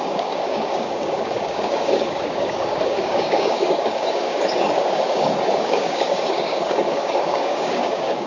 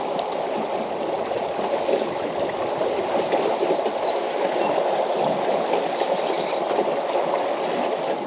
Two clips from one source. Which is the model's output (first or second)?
first